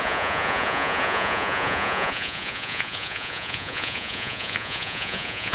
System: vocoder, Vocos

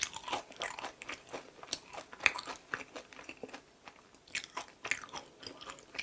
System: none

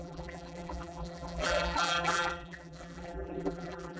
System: vocoder, BigVGAN v2